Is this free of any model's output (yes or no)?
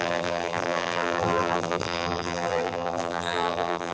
no